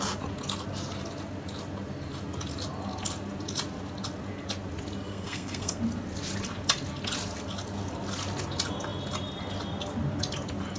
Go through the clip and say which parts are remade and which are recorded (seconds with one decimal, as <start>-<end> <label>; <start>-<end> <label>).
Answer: 0.0-5.1 recorded; 5.1-5.8 remade; 5.8-10.8 recorded